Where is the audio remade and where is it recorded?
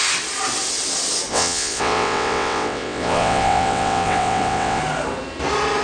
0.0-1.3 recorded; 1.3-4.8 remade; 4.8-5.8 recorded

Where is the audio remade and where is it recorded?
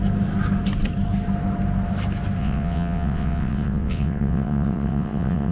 0.0-2.4 recorded; 2.4-5.5 remade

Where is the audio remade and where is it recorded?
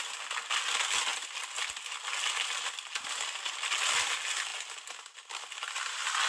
0.0-6.3 recorded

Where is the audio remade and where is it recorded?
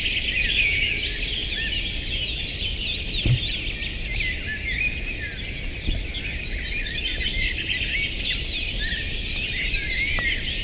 0.0-10.6 recorded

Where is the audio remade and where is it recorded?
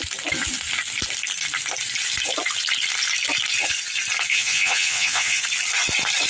0.0-4.3 recorded; 4.3-5.4 remade; 5.4-6.3 recorded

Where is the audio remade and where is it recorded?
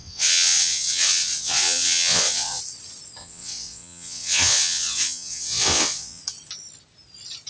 0.0-2.6 remade; 2.6-3.2 recorded; 3.2-6.2 remade; 6.2-7.5 recorded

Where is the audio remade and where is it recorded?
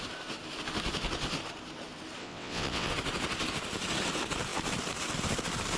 0.0-2.2 recorded; 2.2-2.9 remade; 2.9-5.8 recorded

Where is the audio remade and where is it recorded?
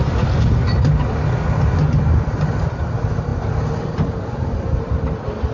0.0-5.5 recorded